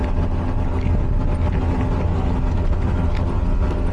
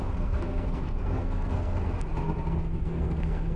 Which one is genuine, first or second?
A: first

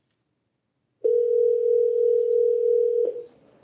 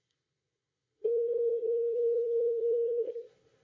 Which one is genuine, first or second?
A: first